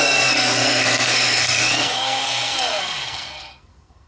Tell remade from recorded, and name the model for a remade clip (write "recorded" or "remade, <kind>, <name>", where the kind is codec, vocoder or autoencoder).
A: remade, codec, SNAC